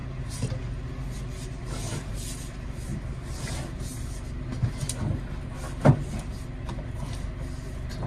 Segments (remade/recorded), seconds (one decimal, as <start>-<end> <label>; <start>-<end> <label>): 0.0-8.1 recorded